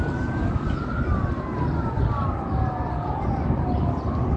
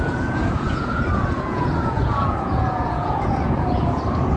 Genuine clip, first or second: first